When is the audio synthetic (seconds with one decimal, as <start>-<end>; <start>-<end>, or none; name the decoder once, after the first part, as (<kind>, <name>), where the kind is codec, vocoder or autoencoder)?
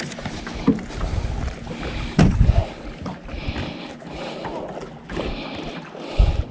none